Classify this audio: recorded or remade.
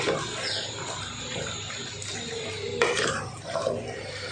recorded